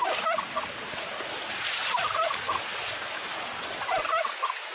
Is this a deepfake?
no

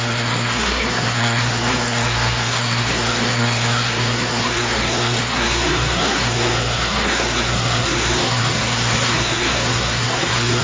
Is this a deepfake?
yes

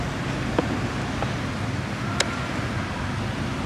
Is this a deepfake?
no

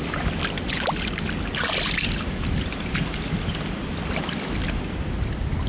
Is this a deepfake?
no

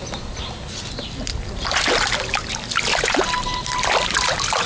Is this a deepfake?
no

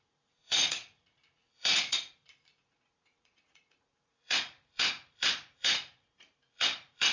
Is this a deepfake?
yes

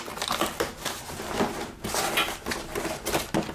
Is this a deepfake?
no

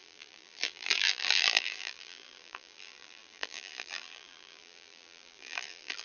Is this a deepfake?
yes